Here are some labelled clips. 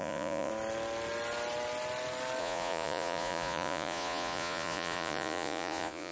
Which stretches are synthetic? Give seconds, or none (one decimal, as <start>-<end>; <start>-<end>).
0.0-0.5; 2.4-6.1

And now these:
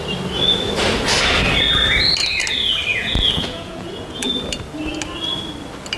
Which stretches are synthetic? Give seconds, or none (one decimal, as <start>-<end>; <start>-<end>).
2.9-4.3

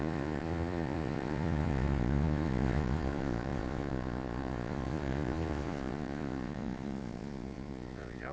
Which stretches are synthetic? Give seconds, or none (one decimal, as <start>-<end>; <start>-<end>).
0.0-8.3

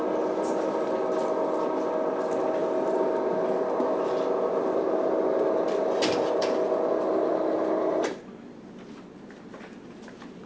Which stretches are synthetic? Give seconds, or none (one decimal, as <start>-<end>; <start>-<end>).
none

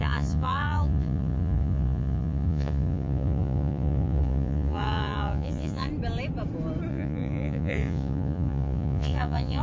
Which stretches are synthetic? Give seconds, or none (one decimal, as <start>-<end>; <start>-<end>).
0.0-5.9; 6.9-9.6

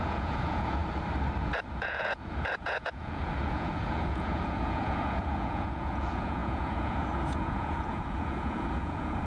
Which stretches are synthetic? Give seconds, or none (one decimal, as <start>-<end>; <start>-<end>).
0.0-0.8; 1.4-9.3

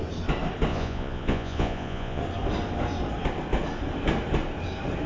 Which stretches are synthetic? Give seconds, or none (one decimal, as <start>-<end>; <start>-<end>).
0.7-2.2

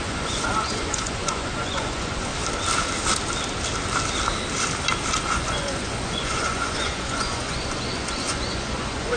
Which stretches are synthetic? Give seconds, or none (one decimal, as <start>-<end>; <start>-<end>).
0.0-2.3; 5.2-9.2